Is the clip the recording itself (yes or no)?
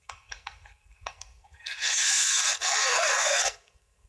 no